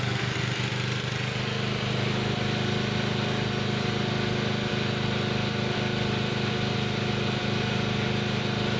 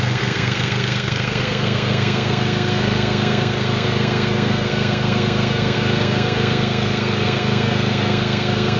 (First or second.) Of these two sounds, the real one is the first